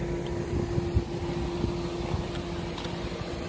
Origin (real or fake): real